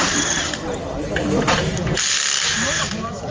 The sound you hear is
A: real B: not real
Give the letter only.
A